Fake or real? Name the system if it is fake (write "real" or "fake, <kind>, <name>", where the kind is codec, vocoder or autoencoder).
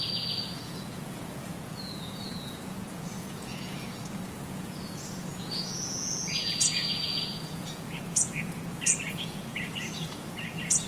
fake, vocoder, Vocos